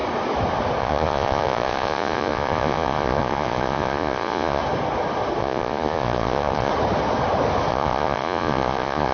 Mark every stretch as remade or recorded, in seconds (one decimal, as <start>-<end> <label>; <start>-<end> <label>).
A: 0.0-0.8 recorded; 0.8-4.6 remade; 4.6-5.4 recorded; 5.4-6.7 remade; 6.7-7.7 recorded; 7.7-9.1 remade